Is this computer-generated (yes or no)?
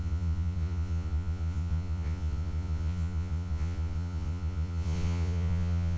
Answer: yes